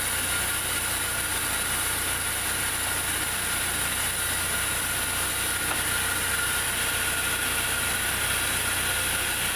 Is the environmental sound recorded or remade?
recorded